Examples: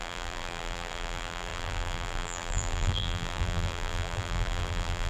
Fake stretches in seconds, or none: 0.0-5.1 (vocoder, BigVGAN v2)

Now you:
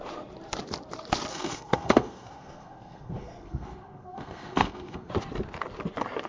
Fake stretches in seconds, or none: 1.3-5.1 (codec, SNAC)

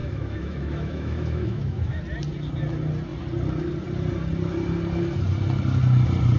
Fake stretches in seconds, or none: 0.0-2.0 (autoencoder, DAC-VAE)